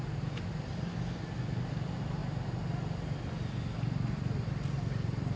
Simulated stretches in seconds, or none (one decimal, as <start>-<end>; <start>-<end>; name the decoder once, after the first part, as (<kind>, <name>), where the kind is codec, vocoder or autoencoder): none